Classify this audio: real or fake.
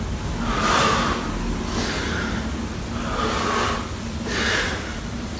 real